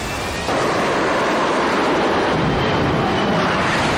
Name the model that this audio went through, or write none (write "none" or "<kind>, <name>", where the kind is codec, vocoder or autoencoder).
vocoder, BigVGAN v2